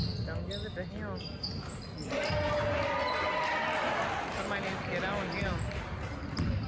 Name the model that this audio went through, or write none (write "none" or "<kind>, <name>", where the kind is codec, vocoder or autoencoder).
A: none